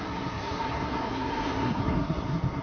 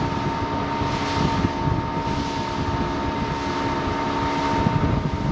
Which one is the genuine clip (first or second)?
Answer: second